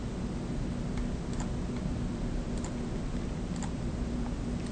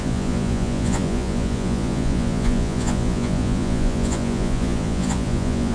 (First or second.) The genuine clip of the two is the first